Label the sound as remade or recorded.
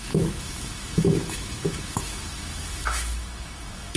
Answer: remade